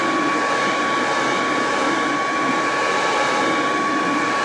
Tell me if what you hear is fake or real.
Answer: real